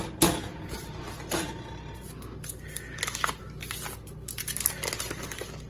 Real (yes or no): yes